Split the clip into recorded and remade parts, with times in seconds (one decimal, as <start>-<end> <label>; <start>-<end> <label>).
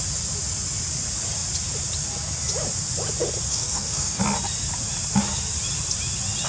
0.0-3.5 recorded; 3.5-4.2 remade; 4.2-6.5 recorded